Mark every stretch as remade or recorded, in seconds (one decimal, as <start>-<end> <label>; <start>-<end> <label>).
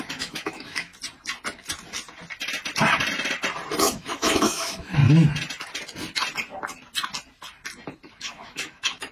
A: 0.0-0.9 remade; 0.9-3.8 recorded; 3.8-5.0 remade; 5.0-8.1 recorded; 8.1-9.1 remade